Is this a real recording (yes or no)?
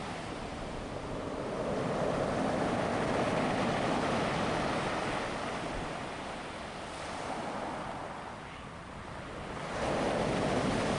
yes